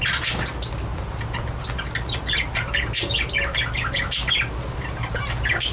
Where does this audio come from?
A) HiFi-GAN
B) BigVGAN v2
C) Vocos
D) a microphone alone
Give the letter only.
D